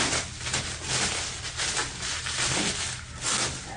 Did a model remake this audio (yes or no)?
no